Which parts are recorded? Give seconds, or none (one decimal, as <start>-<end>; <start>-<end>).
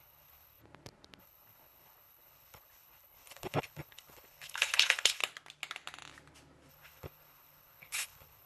0.6-1.2; 5.2-6.7